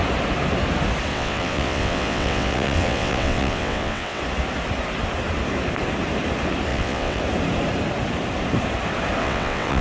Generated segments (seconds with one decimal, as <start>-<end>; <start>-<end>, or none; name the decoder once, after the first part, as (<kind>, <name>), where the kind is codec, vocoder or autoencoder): 1.1-4.2 (vocoder, WaveNeXt); 6.7-7.2; 9.2-9.8